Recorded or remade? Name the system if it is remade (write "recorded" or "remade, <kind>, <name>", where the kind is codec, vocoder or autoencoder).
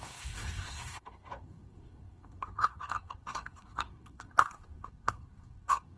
remade, codec, SNAC